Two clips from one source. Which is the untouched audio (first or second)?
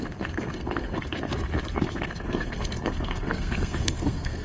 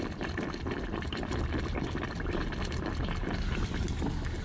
second